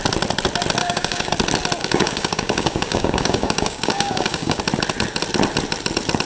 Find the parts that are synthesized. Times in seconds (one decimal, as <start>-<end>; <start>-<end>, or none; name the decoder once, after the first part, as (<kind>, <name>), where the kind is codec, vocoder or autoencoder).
0.8-1.3 (codec, DAC); 1.8-4.6

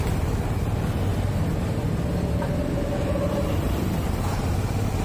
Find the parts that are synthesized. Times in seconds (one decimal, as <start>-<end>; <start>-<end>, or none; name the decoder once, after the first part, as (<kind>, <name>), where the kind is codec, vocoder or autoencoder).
none